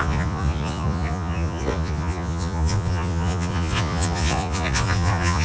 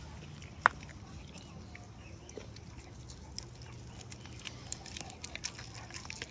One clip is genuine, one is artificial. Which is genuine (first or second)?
second